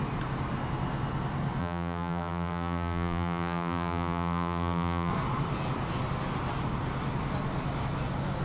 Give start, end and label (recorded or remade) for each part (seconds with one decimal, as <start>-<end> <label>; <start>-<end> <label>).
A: 0.0-1.6 recorded; 1.6-5.1 remade; 5.1-8.4 recorded